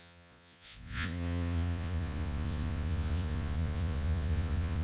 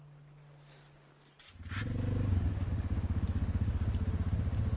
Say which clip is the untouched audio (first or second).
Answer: second